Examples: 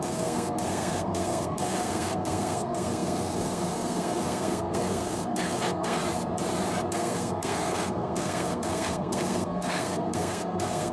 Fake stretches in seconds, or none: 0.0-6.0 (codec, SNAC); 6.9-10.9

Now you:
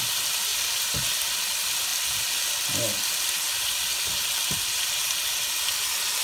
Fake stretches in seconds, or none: none

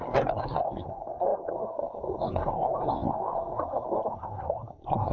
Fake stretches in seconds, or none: 0.0-5.1 (codec, SNAC)

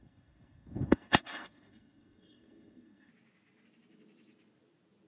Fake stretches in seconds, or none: 0.0-3.1 (codec, SNAC)

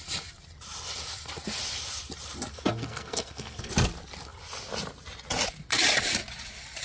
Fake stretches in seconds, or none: 2.5-3.7 (codec, SNAC)

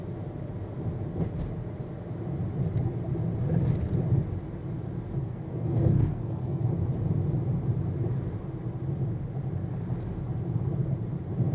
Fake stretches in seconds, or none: 5.2-6.6 (codec, SNAC)